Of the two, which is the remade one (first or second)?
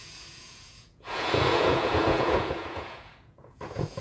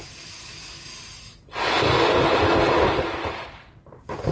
first